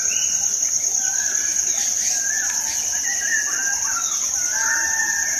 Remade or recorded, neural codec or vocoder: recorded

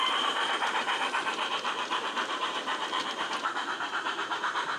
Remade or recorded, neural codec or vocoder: remade, vocoder, BigVGAN v2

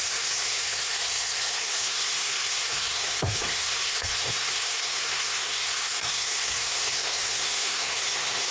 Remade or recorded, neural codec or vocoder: remade, codec, SNAC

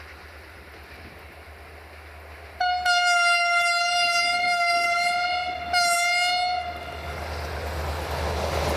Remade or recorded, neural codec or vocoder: recorded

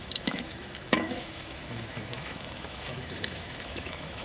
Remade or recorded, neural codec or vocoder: remade, autoencoder, DAC-VAE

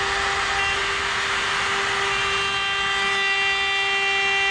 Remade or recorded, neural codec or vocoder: recorded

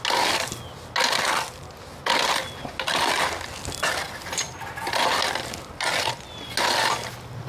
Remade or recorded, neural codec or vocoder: recorded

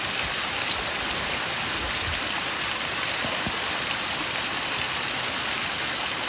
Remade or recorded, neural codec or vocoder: recorded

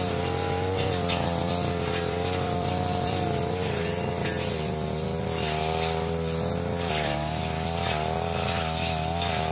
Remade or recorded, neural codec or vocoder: remade, vocoder, BigVGAN v2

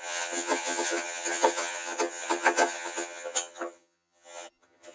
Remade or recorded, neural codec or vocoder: remade, vocoder, HiFi-GAN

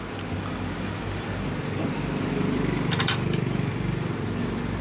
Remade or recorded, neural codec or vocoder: recorded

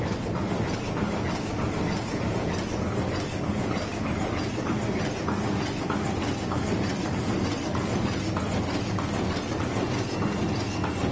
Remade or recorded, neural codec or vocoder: recorded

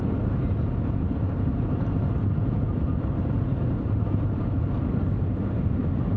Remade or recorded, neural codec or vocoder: remade, vocoder, BigVGAN v2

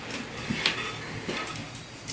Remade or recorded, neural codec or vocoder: recorded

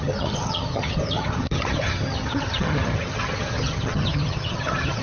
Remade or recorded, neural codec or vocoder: remade, vocoder, HiFi-GAN